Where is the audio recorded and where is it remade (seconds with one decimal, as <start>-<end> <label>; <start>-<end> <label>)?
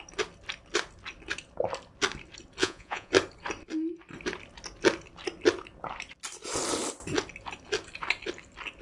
0.0-2.6 recorded; 2.6-3.1 remade; 3.1-8.8 recorded